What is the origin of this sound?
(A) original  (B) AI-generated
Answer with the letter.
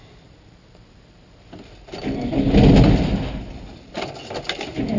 A